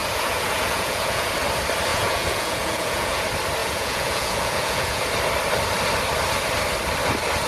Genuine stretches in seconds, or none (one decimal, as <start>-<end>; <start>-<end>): 1.3-1.9; 3.2-3.6; 5.1-7.5